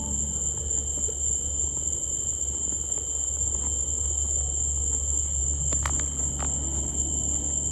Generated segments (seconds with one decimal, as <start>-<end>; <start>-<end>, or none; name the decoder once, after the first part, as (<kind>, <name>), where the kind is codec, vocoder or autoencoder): none